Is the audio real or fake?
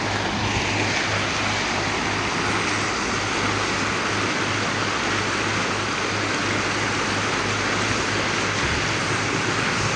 real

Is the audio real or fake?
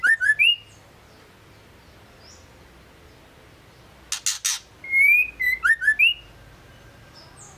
real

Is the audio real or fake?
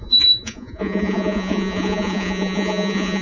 fake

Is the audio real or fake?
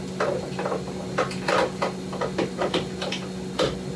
real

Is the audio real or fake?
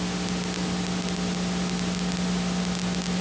real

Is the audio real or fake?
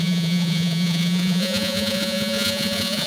fake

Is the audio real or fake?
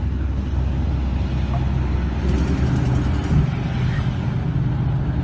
real